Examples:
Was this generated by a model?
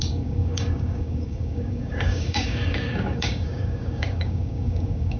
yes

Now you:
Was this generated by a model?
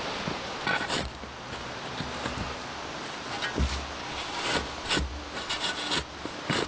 no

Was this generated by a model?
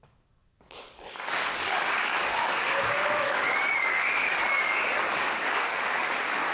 yes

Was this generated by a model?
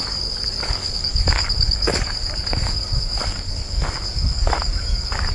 yes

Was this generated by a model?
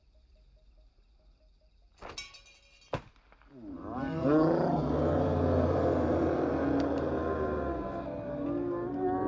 no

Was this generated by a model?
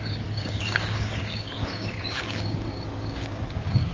yes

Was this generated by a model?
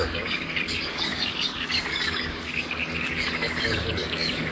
yes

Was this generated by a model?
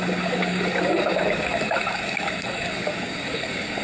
yes